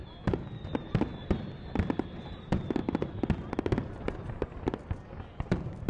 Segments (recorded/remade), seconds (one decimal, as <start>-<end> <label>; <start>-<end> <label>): 0.0-2.8 remade; 2.8-5.4 recorded; 5.4-5.9 remade